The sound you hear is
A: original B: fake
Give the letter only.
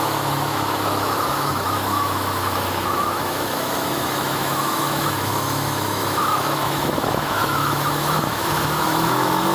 B